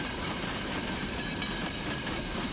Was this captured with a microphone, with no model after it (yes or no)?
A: no